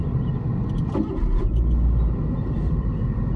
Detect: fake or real real